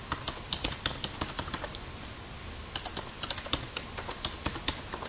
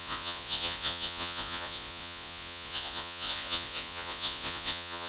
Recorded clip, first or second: first